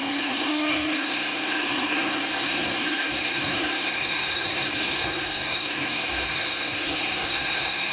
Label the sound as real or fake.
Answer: fake